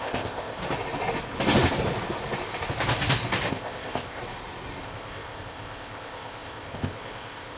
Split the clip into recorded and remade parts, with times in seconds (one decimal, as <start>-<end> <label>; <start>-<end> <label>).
0.0-0.6 remade; 0.6-3.5 recorded; 3.5-4.2 remade; 4.2-4.8 recorded; 4.8-7.6 remade